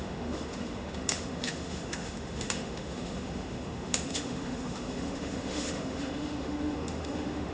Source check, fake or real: fake